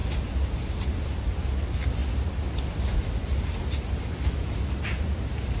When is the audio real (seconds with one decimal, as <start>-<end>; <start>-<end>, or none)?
0.0-5.6